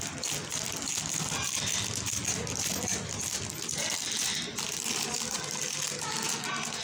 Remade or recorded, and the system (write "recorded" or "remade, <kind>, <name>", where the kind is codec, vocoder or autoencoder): recorded